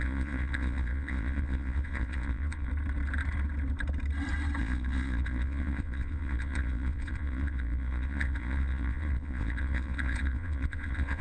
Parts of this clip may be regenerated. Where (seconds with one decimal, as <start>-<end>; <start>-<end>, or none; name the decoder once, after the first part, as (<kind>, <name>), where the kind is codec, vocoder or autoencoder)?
0.0-2.7 (vocoder, Vocos); 4.6-11.2